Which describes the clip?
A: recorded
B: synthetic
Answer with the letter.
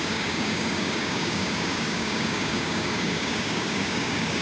B